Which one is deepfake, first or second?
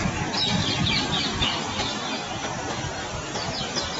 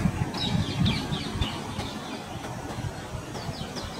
second